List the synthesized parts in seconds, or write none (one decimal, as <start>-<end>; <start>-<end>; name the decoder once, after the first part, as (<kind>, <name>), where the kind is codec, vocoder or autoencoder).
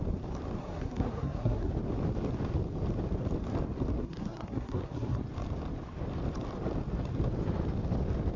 0.6-1.7 (codec, SNAC); 4.0-5.2